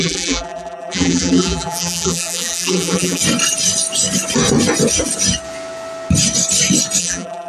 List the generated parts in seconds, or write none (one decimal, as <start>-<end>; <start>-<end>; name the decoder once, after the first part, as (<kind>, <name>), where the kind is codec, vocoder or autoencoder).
0.0-3.2 (vocoder, BigVGAN v2); 7.0-7.5